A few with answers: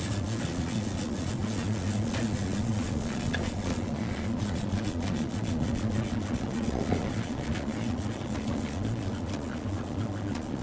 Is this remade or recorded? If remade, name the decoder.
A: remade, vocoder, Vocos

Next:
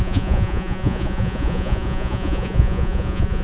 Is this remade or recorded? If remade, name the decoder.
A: remade, vocoder, Vocos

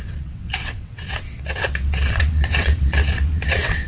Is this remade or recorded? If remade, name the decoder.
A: remade, vocoder, WaveNeXt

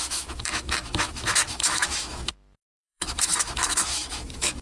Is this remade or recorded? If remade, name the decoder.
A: remade, autoencoder, DAC-VAE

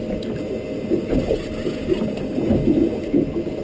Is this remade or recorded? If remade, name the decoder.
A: recorded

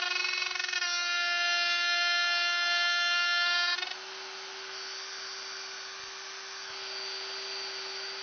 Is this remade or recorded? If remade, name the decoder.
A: recorded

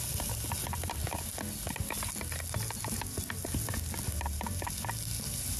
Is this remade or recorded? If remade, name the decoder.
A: recorded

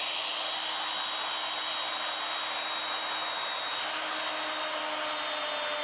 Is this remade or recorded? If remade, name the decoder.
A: recorded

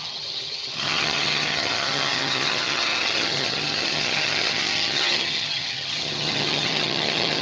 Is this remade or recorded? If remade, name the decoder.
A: remade, vocoder, HiFi-GAN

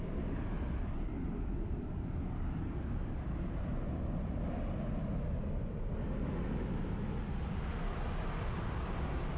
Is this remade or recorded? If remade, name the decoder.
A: recorded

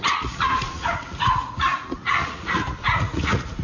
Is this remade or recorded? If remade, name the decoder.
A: remade, vocoder, Vocos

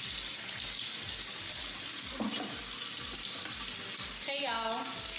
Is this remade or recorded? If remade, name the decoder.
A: recorded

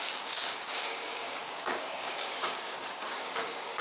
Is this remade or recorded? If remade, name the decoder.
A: remade, codec, DAC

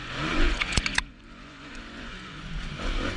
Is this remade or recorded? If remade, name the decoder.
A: remade, vocoder, Vocos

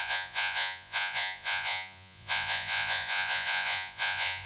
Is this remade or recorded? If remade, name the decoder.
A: remade, vocoder, Vocos